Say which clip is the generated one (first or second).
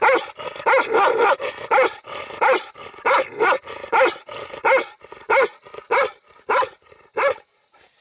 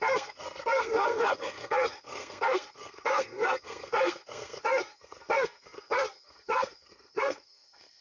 second